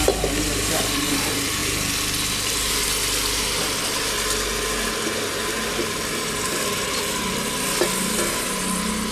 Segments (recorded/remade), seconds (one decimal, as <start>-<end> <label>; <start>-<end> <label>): 0.0-9.1 recorded